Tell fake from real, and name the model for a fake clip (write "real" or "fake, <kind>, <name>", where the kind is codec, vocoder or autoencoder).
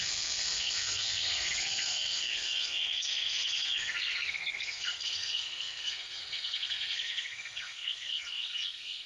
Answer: fake, codec, SNAC